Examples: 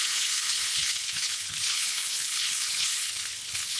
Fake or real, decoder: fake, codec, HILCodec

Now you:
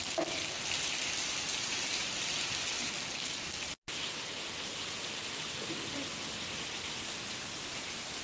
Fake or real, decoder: real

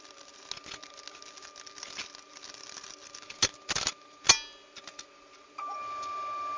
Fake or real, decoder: real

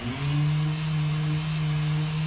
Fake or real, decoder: real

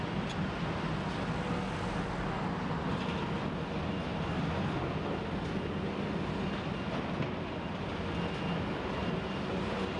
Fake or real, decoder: real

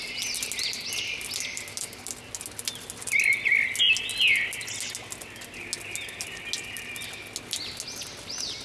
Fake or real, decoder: real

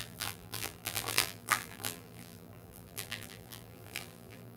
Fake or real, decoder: fake, vocoder, BigVGAN v2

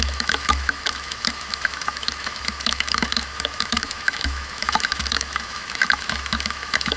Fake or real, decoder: fake, autoencoder, DAC-VAE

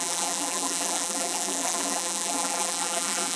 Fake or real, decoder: fake, vocoder, BigVGAN v2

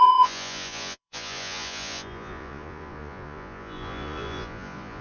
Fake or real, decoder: fake, vocoder, Vocos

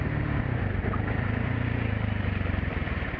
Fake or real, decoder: fake, vocoder, BigVGAN v2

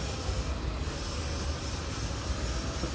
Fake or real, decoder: real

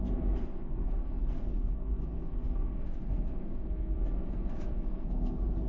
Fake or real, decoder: fake, codec, SNAC